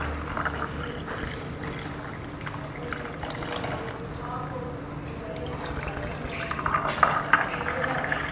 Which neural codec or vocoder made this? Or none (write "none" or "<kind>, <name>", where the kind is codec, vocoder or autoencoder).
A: none